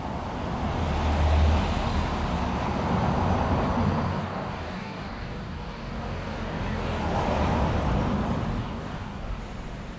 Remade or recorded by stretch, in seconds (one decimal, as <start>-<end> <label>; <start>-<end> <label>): 0.0-4.2 recorded; 4.2-7.1 remade; 7.1-8.6 recorded; 8.6-9.4 remade; 9.4-10.0 recorded